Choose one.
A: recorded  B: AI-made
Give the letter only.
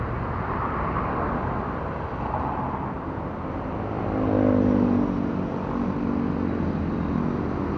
A